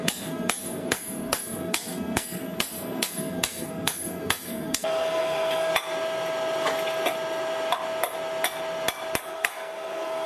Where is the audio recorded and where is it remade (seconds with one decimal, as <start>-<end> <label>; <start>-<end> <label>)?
0.0-5.7 remade; 5.7-9.2 recorded; 9.2-10.3 remade